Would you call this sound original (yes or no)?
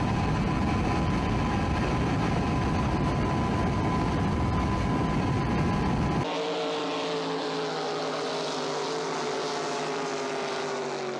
yes